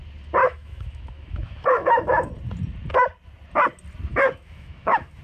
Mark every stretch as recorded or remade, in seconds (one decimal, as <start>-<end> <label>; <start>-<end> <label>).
0.0-0.4 recorded; 0.4-2.3 remade; 2.3-4.1 recorded; 4.1-5.2 remade